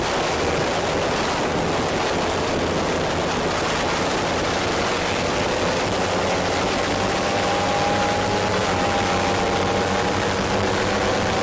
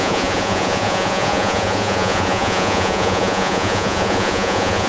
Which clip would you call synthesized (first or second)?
second